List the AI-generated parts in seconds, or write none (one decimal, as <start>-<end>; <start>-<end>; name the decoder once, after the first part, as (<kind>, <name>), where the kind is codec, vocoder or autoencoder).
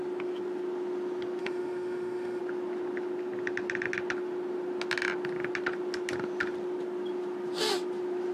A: 1.4-2.4 (autoencoder, DAC-VAE)